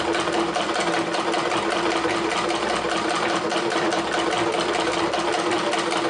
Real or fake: real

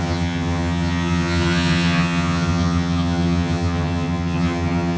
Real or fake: fake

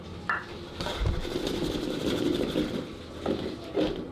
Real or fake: real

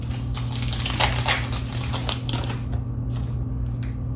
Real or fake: real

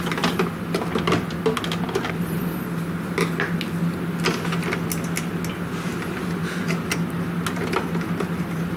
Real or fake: real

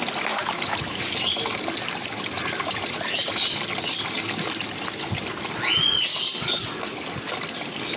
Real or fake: real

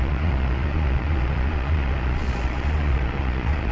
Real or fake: fake